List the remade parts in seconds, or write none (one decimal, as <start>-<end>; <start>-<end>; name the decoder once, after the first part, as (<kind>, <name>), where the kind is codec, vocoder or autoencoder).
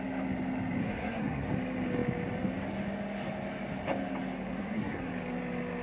0.8-1.5 (codec, SNAC); 4.6-5.1